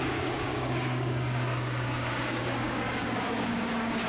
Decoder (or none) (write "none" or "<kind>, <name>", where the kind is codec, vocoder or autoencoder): codec, DAC